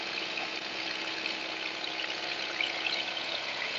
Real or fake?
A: fake